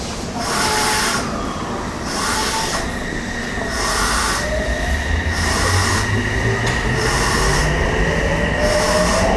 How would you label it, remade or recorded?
recorded